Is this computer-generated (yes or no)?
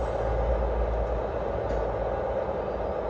no